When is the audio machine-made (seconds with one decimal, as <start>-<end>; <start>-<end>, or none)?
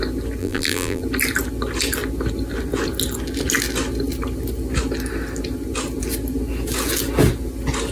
0.4-1.0